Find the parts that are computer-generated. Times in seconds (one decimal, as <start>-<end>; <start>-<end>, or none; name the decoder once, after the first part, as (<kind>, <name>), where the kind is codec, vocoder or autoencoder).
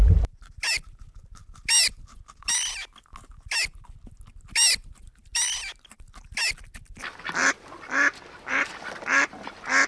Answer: none